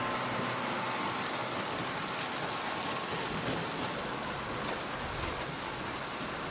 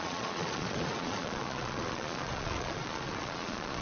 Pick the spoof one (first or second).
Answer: second